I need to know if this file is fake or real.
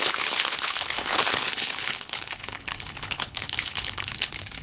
fake